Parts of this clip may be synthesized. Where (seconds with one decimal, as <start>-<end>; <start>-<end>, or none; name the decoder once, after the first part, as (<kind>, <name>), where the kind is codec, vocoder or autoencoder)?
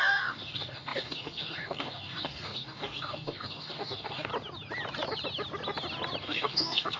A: 0.0-4.3 (codec, DAC); 6.2-7.0